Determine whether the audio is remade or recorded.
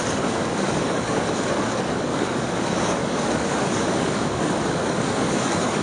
remade